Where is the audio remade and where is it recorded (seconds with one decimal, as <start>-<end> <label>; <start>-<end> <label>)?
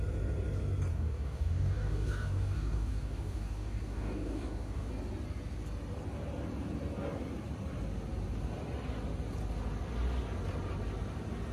0.0-0.9 recorded; 0.9-4.9 remade; 4.9-11.5 recorded